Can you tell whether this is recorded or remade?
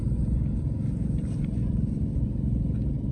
recorded